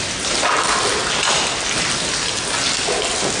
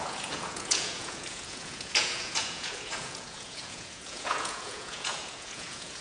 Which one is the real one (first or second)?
first